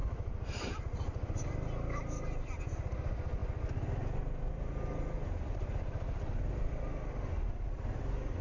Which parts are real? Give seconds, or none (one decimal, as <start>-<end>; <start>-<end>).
0.0-8.4